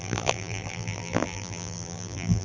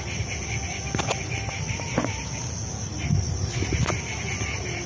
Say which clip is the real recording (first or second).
second